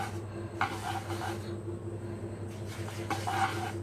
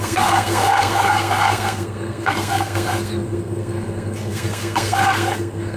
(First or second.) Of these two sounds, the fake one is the second